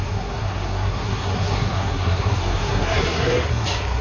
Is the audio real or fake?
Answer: fake